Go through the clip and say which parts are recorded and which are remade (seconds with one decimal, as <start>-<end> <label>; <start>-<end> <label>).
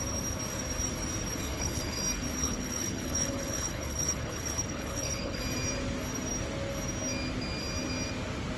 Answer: 0.0-1.5 recorded; 1.5-2.0 remade; 2.0-2.4 recorded; 2.4-5.4 remade; 5.4-8.6 recorded